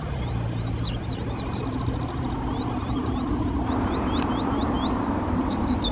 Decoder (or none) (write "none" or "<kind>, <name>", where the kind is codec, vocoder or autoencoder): none